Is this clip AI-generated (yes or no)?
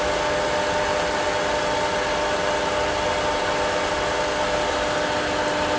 no